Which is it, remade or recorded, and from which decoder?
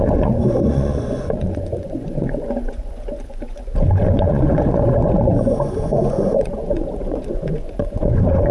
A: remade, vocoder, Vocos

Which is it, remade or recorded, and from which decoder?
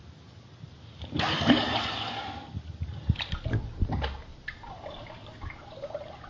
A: recorded